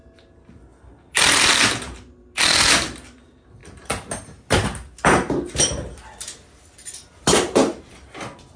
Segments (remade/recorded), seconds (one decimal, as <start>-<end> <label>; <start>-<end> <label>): 0.0-8.6 recorded